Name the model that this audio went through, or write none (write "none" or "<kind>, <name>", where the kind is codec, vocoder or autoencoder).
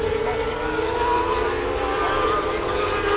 none